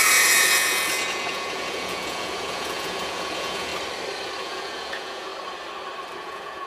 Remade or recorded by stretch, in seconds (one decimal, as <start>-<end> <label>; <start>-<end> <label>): 0.0-3.7 remade; 3.7-4.4 recorded; 4.4-5.3 remade; 5.3-6.2 recorded; 6.2-6.7 remade